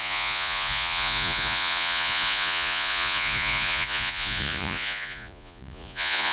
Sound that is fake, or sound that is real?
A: fake